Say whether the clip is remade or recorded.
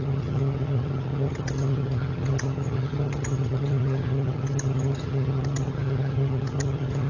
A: remade